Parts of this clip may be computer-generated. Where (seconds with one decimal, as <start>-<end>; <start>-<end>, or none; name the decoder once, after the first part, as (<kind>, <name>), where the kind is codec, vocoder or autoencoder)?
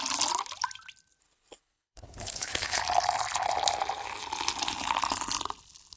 1.2-2.8 (codec, HILCodec)